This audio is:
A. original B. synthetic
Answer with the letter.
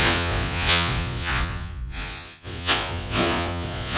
B